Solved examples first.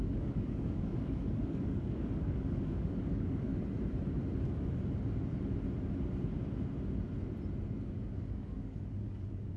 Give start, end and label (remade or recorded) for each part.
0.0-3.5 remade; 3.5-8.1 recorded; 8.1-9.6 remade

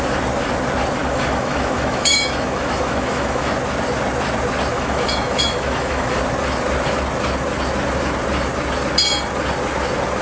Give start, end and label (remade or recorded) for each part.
0.0-1.0 recorded; 1.0-3.5 remade; 3.5-4.7 recorded; 4.7-6.2 remade; 6.2-10.2 recorded

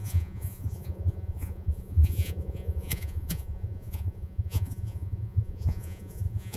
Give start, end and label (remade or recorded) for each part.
0.0-6.6 remade

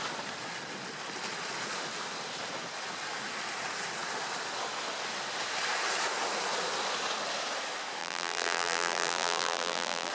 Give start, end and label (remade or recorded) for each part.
0.0-8.0 recorded; 8.0-10.1 remade

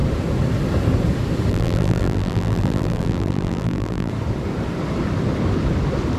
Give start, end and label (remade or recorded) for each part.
0.0-1.5 recorded; 1.5-4.1 remade; 4.1-6.2 recorded

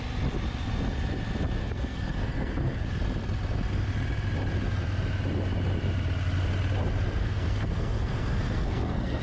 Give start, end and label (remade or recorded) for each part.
0.0-1.6 recorded; 1.6-2.9 remade; 2.9-7.2 recorded; 7.2-9.2 remade